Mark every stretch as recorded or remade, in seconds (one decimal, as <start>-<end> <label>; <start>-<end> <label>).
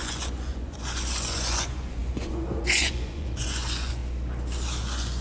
0.0-4.0 remade; 4.0-4.8 recorded; 4.8-5.2 remade